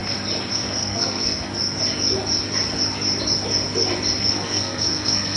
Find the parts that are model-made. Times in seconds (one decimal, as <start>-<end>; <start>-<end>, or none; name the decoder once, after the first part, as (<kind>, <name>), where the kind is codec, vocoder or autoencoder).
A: 0.5-1.5 (codec, SNAC); 4.2-5.4